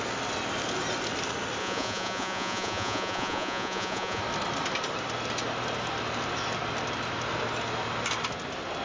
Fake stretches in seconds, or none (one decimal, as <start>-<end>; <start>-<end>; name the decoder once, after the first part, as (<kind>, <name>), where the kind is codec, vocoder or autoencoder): 1.6-4.2 (vocoder, Vocos)